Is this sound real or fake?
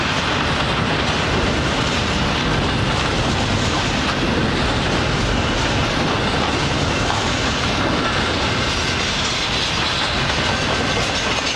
real